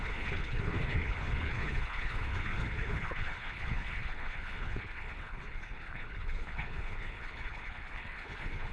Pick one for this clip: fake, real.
fake